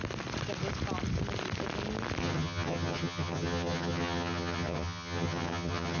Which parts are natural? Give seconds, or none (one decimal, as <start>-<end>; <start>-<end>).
0.0-2.2